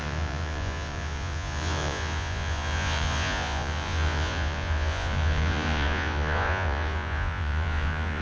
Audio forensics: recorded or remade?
remade